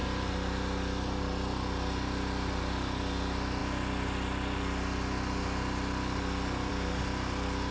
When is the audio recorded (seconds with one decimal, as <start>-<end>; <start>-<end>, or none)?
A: 0.0-7.7

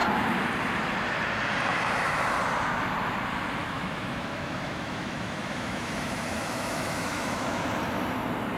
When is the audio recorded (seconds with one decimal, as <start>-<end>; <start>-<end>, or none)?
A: 0.0-3.6; 7.7-8.6

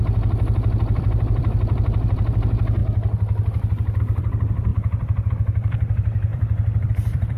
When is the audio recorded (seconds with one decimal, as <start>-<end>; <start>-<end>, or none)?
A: 2.8-4.0

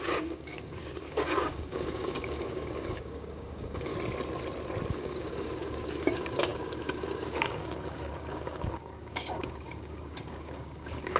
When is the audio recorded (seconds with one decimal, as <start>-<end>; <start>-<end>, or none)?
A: 3.9-4.9

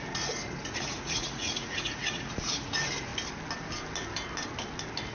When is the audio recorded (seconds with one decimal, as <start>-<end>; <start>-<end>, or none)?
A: 3.1-5.1

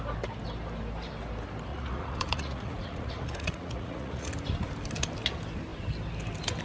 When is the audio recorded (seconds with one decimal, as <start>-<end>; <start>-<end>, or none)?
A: 0.0-1.7; 4.3-6.6